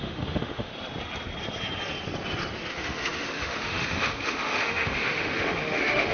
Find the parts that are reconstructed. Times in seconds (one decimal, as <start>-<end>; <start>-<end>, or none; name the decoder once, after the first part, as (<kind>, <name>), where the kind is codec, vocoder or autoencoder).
0.0-0.7 (autoencoder, DAC-VAE); 2.7-6.1